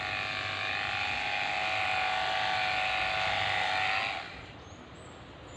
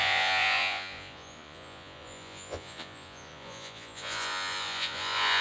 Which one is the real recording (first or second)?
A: first